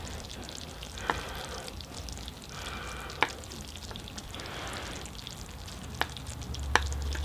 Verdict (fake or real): real